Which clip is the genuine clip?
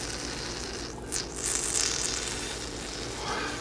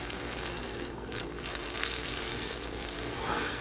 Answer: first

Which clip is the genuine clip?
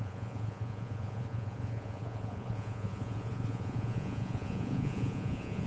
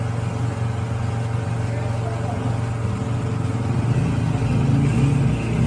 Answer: second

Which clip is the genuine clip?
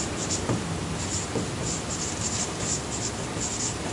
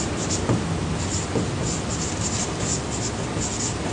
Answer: second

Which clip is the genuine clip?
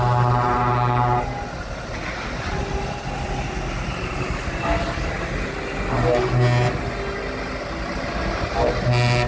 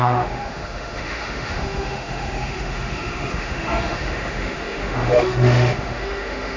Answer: first